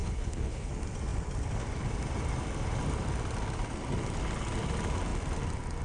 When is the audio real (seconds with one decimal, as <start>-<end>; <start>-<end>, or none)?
0.7-5.8